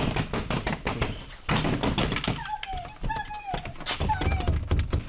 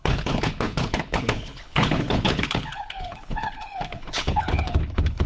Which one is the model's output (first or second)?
second